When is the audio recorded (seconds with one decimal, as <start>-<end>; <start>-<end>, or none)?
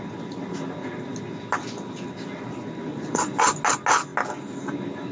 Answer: 0.0-2.9; 3.4-5.1